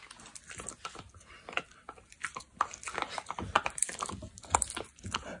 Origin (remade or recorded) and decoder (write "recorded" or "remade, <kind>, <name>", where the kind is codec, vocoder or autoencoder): recorded